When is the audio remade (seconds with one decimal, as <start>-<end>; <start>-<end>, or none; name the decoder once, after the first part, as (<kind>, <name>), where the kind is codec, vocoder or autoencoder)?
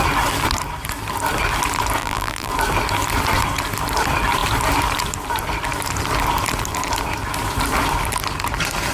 2.0-2.5 (vocoder, BigVGAN v2)